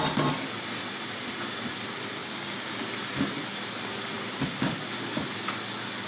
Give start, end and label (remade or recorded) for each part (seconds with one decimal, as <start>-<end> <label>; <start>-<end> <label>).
0.0-2.2 recorded; 2.2-2.9 remade; 2.9-6.1 recorded